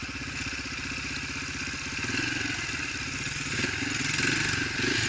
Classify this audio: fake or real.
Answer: real